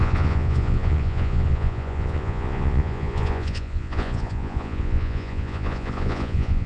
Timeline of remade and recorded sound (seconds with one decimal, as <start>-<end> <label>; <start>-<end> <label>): 0.0-6.7 remade